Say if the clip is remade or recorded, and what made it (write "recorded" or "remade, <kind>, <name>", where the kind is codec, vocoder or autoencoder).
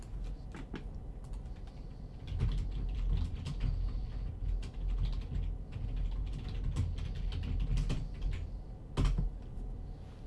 recorded